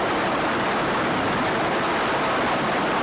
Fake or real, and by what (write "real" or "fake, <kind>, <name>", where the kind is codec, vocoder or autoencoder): fake, vocoder, BigVGAN v2